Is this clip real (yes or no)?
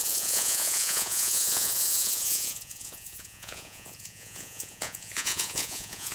no